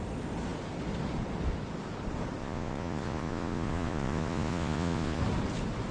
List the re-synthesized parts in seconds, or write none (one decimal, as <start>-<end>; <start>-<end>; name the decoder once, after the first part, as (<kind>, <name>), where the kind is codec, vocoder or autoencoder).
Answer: 2.4-5.2 (vocoder, Vocos)